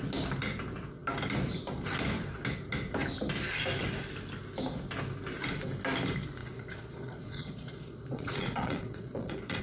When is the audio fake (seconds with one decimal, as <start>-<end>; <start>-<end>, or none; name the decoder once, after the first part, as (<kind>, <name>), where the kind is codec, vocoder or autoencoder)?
6.4-9.6 (vocoder, Vocos)